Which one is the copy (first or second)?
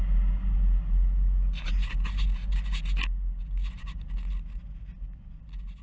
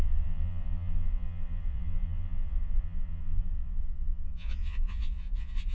second